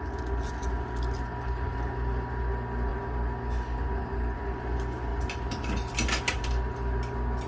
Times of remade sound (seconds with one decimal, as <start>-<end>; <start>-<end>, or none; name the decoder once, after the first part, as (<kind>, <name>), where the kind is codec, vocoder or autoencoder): none